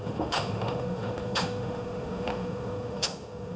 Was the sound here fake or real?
fake